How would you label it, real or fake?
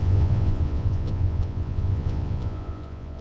fake